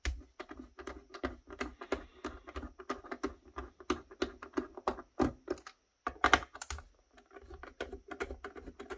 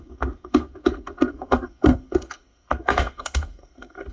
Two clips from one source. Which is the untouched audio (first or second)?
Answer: first